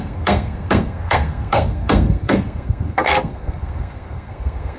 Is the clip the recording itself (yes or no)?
no